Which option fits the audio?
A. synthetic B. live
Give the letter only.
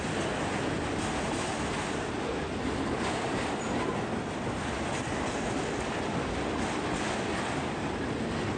B